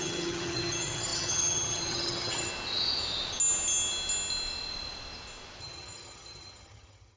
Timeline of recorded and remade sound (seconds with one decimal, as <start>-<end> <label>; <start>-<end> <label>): 0.0-2.5 remade; 2.5-5.6 recorded; 5.6-7.2 remade